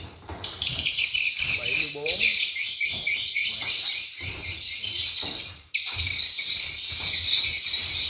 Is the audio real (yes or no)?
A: no